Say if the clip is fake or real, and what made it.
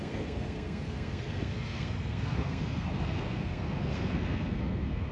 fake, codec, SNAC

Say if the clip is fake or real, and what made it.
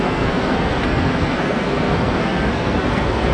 fake, codec, SNAC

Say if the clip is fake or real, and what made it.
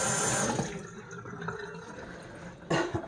real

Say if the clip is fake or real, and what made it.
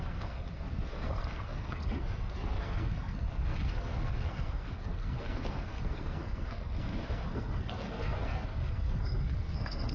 fake, codec, SNAC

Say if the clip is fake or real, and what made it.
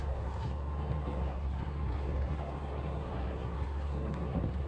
fake, codec, SNAC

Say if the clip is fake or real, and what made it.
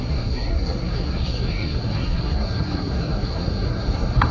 fake, codec, SNAC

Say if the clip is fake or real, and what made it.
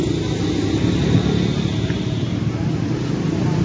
real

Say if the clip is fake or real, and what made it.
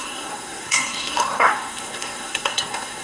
fake, codec, SNAC